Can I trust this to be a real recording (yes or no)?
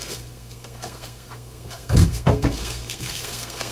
no